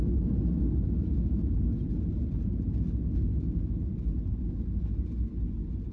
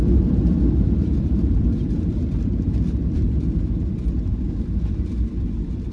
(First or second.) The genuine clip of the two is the first